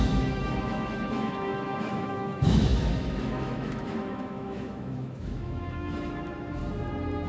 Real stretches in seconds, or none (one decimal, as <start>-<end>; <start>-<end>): 6.6-7.3